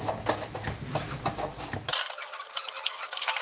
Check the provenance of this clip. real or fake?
real